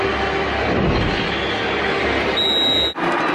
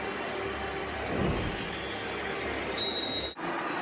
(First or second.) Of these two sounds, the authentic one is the first